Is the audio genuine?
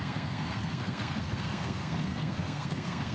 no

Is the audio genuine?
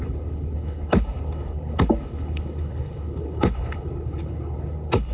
no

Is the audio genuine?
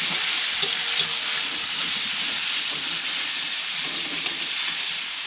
yes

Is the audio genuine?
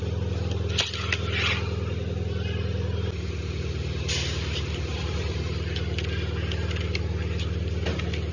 yes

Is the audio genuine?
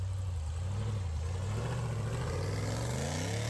yes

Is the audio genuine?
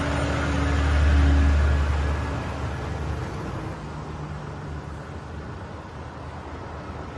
yes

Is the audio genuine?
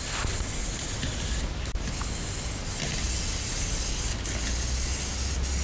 yes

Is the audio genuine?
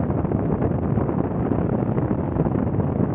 yes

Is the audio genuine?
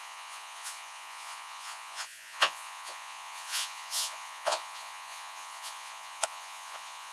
no